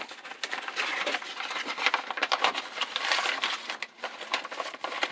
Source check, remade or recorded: recorded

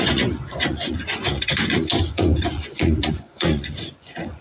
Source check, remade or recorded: remade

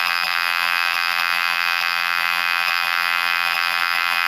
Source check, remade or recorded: remade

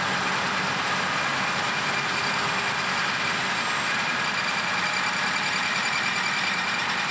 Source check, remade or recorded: recorded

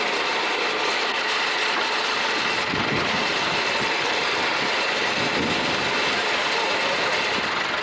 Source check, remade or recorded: recorded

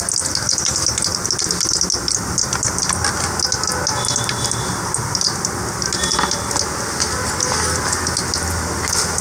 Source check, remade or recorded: recorded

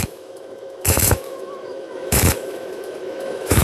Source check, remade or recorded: remade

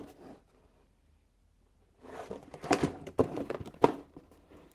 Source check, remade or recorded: recorded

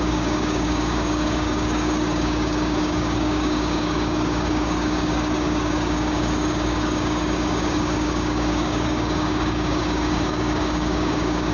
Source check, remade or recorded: remade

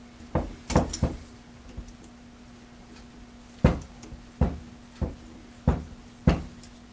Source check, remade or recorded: recorded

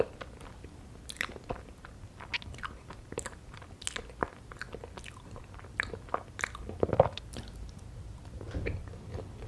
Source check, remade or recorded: recorded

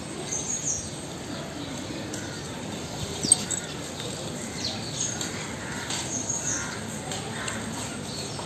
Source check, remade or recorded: recorded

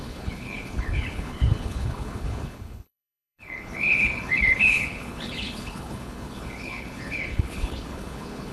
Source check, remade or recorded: remade